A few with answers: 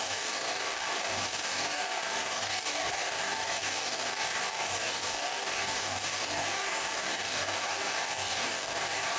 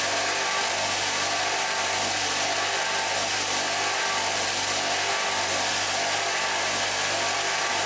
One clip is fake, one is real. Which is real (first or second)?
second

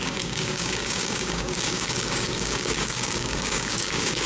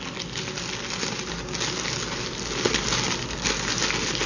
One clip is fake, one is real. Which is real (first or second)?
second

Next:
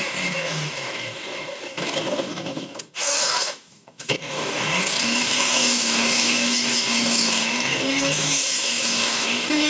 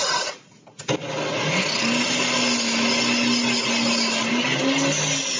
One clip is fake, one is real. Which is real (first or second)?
second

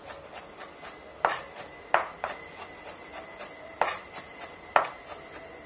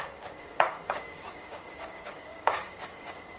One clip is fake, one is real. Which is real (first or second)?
first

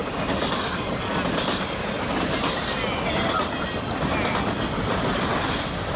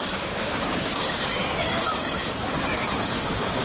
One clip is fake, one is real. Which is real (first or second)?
first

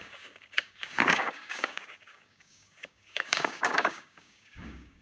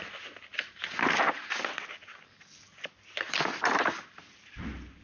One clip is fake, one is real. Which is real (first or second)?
second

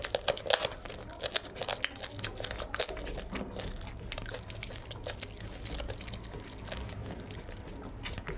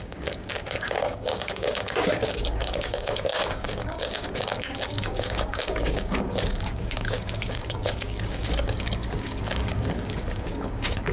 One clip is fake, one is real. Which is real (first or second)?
first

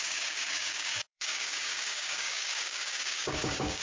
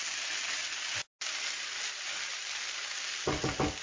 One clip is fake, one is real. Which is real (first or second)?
second